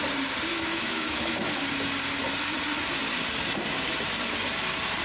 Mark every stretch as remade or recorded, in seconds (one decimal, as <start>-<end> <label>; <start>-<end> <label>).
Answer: 0.0-0.5 recorded; 0.5-1.7 remade; 1.7-5.0 recorded